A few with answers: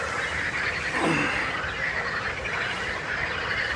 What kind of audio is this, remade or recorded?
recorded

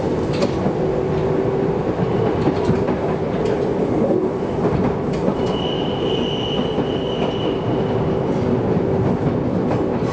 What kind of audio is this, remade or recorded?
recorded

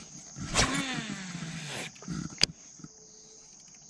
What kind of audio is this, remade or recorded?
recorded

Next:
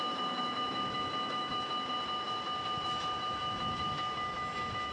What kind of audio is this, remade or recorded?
remade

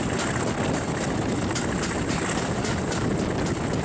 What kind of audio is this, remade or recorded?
recorded